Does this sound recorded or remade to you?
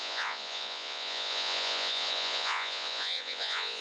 remade